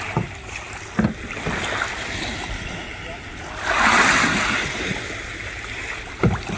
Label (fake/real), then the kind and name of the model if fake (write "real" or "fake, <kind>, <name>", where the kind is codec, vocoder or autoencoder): real